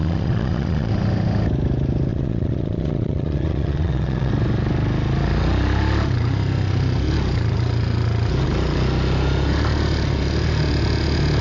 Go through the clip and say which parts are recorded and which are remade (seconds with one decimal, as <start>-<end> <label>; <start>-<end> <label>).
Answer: 0.0-0.9 remade; 0.9-2.1 recorded; 2.1-4.3 remade; 4.3-11.4 recorded